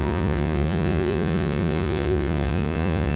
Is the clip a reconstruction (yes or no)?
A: yes